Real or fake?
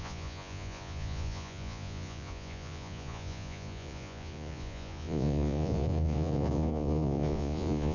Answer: fake